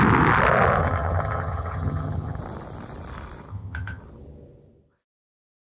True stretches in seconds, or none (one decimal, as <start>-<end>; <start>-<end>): 0.0-0.8; 2.4-3.5; 4.0-5.7